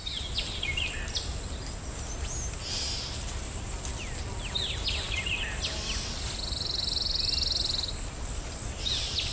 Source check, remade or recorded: recorded